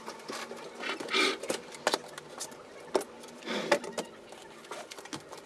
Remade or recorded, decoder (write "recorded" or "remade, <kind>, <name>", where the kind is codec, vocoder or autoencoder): recorded